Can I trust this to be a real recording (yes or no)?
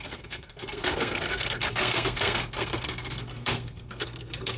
no